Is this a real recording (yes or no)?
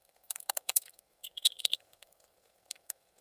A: no